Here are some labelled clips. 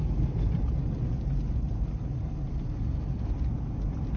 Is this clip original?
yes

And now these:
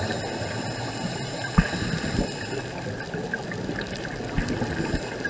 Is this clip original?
yes